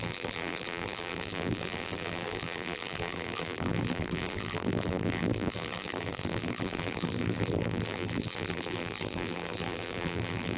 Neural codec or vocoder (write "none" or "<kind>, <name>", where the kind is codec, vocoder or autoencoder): vocoder, BigVGAN v2